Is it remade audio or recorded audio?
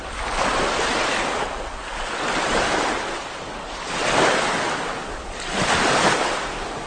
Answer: recorded